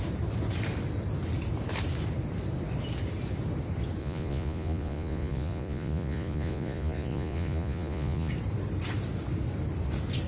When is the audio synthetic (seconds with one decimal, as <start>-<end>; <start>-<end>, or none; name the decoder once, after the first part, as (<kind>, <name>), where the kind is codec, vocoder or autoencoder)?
4.0-8.3 (vocoder, Vocos)